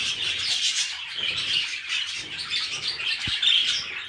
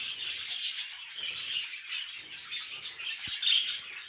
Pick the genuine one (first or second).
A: second